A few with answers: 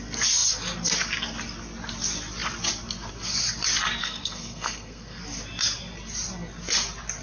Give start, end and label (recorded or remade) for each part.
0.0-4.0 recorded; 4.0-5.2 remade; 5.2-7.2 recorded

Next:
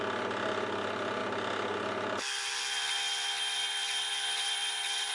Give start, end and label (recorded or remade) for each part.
0.0-5.1 recorded

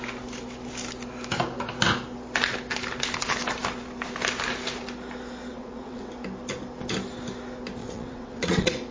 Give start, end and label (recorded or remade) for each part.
0.0-5.5 recorded; 5.5-6.1 remade; 6.1-7.8 recorded; 7.8-8.9 remade

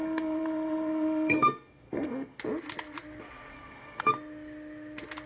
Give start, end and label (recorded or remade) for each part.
0.0-2.4 remade; 2.4-3.5 recorded; 3.5-4.1 remade; 4.1-5.3 recorded

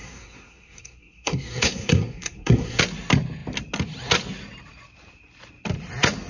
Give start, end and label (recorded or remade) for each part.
0.0-2.8 remade; 2.8-6.3 recorded

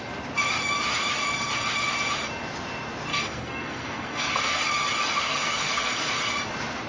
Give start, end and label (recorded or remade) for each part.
0.0-3.1 recorded; 3.1-4.6 remade; 4.6-5.2 recorded; 5.2-6.1 remade; 6.1-6.9 recorded

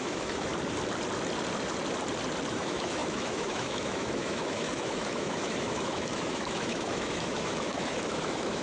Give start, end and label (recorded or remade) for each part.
0.0-0.5 remade; 0.5-2.5 recorded; 2.5-8.6 remade

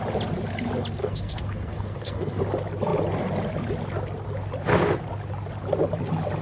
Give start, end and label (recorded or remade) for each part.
0.0-1.0 recorded; 1.0-2.4 remade; 2.4-6.4 recorded